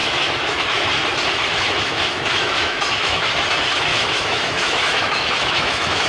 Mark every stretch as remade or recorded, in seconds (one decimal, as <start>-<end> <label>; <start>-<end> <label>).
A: 0.0-0.9 remade; 0.9-1.5 recorded; 1.5-3.3 remade; 3.3-3.9 recorded; 3.9-6.1 remade